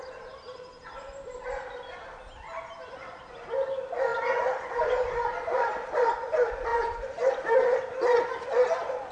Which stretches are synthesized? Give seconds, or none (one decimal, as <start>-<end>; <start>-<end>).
none